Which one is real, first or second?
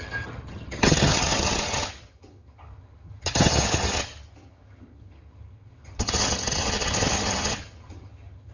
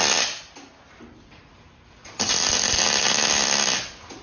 second